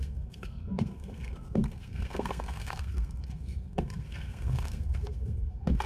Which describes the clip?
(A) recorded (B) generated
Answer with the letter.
B